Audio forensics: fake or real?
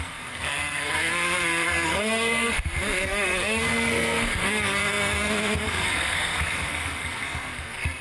fake